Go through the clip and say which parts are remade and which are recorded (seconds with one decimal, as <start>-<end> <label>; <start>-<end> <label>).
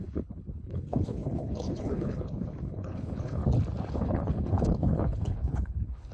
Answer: 0.0-3.4 remade; 3.4-3.9 recorded; 3.9-6.1 remade